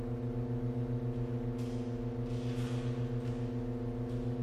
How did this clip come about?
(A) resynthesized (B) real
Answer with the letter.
B